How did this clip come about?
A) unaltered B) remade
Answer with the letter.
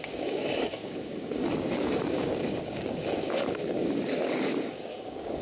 B